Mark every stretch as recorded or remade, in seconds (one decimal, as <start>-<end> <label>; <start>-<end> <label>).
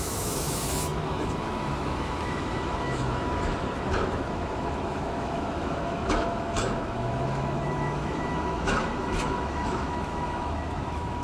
0.0-11.2 remade